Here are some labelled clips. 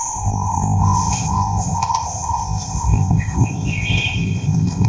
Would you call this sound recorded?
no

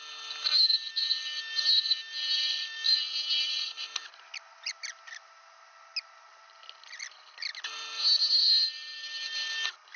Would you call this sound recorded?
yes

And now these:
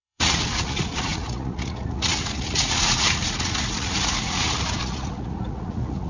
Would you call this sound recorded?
no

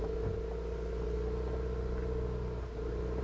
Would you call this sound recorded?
yes